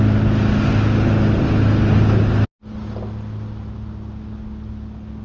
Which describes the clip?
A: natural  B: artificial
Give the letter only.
A